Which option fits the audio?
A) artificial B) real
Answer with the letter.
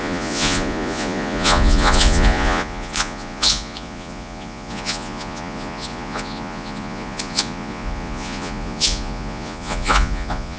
A